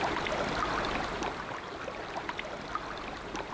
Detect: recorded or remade recorded